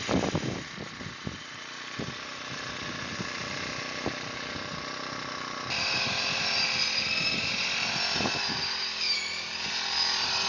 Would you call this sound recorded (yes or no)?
yes